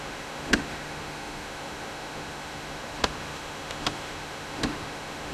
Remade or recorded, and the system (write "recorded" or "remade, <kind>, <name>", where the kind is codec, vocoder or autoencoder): remade, autoencoder, DAC-VAE